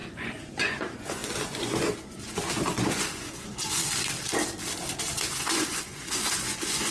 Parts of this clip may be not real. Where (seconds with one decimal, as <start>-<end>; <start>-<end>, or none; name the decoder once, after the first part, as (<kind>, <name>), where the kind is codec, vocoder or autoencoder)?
0.0-3.8 (vocoder, Vocos); 5.0-6.9